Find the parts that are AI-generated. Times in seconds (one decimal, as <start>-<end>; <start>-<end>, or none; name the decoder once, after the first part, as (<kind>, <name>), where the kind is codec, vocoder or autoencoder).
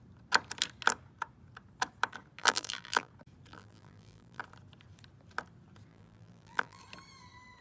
2.4-3.1 (vocoder, BigVGAN v2); 3.5-4.4; 5.9-6.8